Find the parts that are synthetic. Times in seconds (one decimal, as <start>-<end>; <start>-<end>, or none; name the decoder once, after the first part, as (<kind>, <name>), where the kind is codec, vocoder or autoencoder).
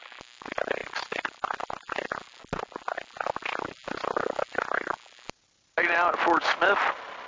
none